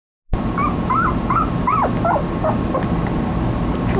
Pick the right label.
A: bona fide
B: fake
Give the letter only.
A